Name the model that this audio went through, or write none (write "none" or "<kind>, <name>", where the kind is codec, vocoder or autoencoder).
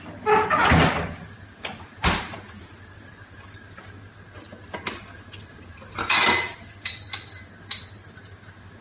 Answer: none